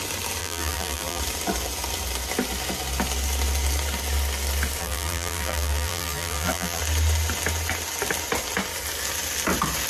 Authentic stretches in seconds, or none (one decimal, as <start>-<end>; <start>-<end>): 0.0-0.4; 1.2-4.8; 6.8-9.9